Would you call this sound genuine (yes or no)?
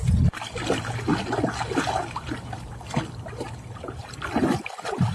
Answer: yes